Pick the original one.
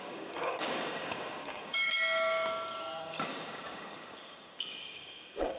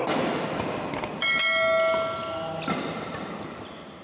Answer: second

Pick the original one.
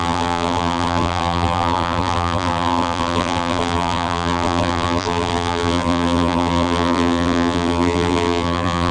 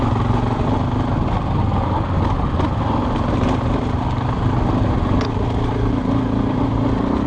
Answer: second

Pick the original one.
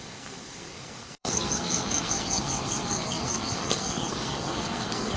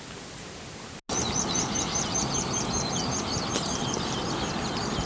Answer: second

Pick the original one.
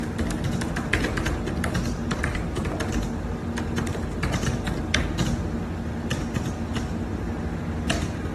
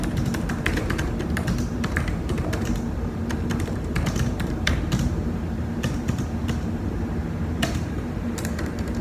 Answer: first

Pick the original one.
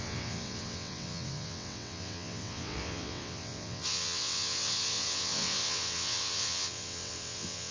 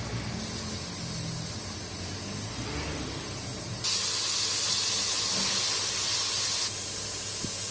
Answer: second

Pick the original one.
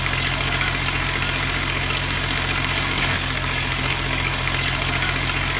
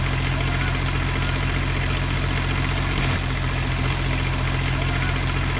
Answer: second